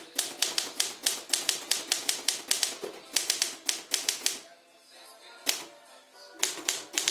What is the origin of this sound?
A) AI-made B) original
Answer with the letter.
B